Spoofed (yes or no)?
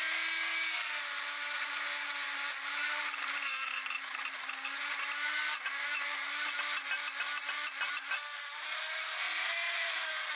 no